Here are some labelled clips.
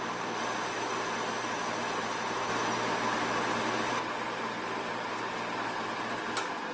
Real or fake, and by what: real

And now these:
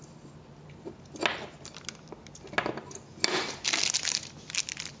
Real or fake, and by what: real